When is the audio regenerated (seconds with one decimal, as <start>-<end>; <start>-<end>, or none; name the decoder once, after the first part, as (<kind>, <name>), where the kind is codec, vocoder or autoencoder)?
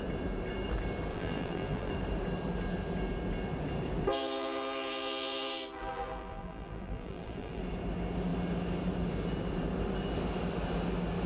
1.1-1.9 (vocoder, BigVGAN v2); 4.1-7.6